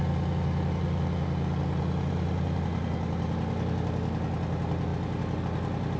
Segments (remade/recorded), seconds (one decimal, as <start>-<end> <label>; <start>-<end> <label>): 0.0-6.0 recorded